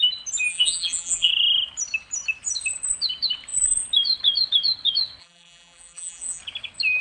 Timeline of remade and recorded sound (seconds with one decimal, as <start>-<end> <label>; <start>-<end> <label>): 0.0-0.5 recorded; 0.5-1.3 remade; 1.3-5.2 recorded; 5.2-6.4 remade; 6.4-7.0 recorded